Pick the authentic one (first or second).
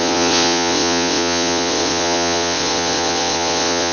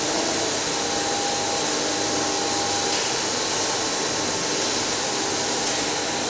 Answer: second